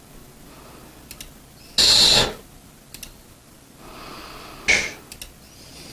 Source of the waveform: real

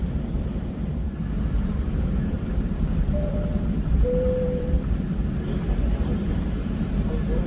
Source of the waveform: fake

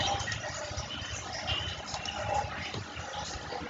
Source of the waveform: real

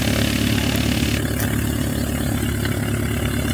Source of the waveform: real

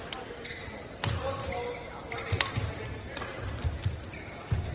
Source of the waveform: fake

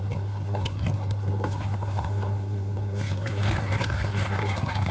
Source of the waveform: fake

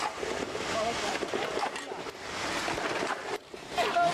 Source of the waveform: real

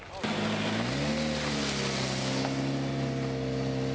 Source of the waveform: real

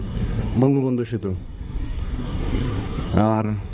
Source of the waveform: fake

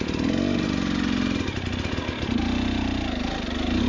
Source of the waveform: real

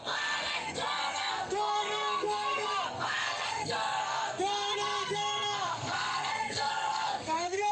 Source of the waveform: fake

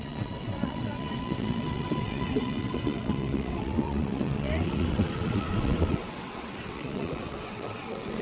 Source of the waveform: fake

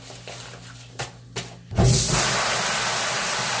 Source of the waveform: real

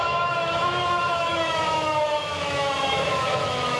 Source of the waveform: fake